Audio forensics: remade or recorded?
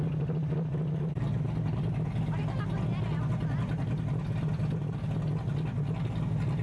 recorded